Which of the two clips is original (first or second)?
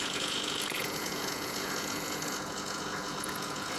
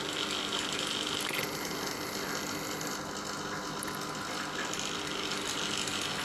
second